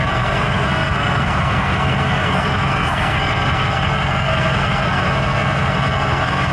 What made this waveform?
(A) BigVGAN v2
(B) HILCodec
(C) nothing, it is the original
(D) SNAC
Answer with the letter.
D